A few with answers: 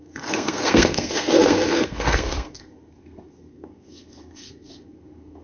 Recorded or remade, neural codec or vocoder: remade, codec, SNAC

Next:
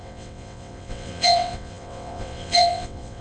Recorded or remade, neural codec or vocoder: remade, vocoder, WaveNeXt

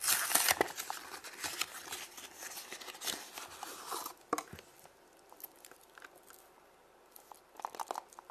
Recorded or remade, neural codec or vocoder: recorded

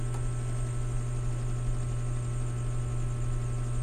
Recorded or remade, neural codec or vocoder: recorded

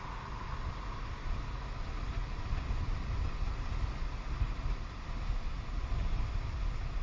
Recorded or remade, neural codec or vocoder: recorded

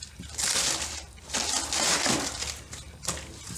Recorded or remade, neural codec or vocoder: recorded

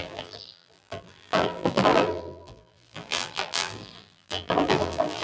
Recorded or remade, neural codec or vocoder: remade, vocoder, BigVGAN v2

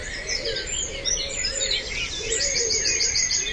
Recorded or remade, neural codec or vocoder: recorded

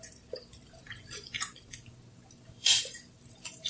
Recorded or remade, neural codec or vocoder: remade, vocoder, BigVGAN v2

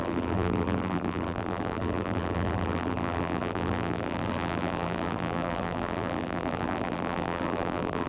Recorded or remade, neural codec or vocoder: remade, vocoder, BigVGAN v2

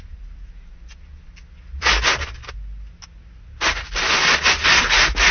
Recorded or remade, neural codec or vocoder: recorded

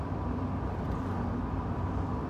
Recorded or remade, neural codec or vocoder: recorded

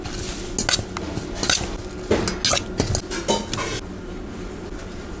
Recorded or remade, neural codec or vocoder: recorded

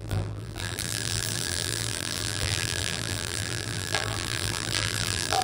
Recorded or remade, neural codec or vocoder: remade, vocoder, BigVGAN v2